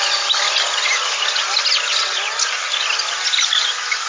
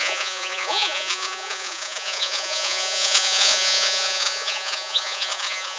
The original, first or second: first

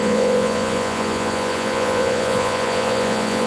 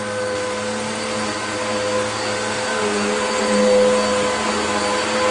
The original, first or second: second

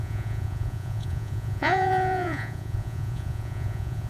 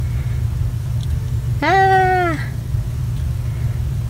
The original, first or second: second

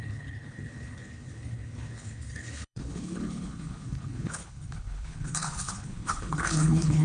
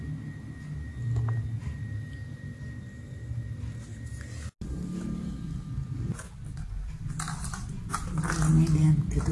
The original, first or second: second